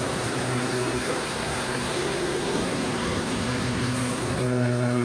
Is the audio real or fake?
fake